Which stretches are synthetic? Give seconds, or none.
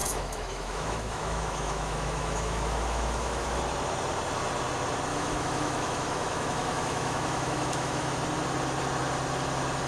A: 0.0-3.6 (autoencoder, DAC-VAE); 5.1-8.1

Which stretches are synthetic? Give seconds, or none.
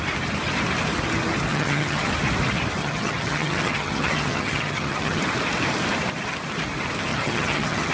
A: 1.5-2.1 (vocoder, HiFi-GAN); 2.8-5.2; 7.1-7.9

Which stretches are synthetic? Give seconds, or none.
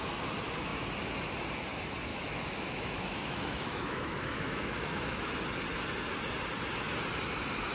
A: 2.1-5.4 (autoencoder, DAC-VAE)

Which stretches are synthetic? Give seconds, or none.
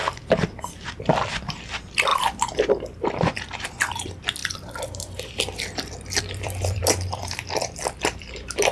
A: 0.0-2.1 (vocoder, BigVGAN v2); 2.7-8.7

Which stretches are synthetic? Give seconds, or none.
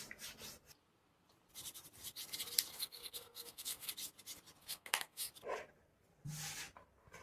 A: 2.7-3.9 (codec, SNAC); 4.6-5.3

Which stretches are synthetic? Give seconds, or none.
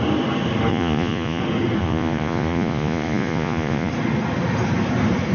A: 0.7-1.4 (vocoder, Vocos); 1.8-3.9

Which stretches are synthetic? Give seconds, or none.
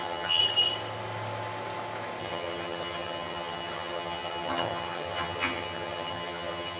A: 0.0-0.4 (vocoder, HiFi-GAN); 2.2-6.8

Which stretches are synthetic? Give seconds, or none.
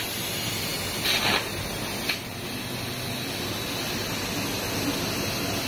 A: none